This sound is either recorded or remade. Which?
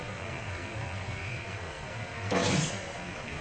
remade